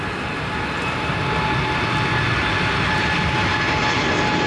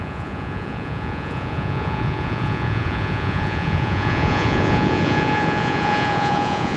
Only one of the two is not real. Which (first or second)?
second